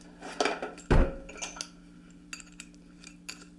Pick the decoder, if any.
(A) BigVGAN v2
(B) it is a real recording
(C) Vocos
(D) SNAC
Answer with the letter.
B